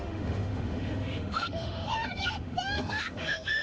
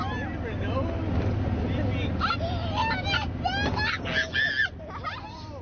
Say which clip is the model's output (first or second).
first